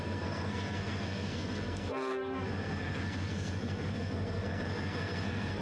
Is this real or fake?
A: fake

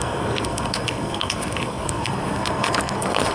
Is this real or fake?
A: fake